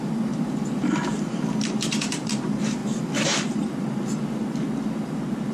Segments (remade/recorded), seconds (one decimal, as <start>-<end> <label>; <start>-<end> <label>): 0.0-2.8 remade; 2.8-5.5 recorded